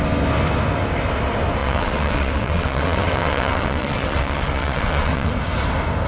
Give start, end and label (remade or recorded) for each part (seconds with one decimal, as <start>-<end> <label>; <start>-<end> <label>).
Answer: 0.0-1.6 recorded; 1.6-5.3 remade; 5.3-6.1 recorded